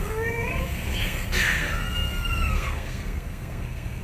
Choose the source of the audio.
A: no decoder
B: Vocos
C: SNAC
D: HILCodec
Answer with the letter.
C